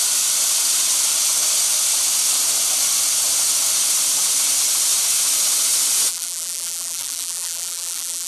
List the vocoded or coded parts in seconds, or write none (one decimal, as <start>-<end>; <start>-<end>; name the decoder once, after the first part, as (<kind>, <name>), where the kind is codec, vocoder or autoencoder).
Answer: 6.1-8.3 (vocoder, BigVGAN v2)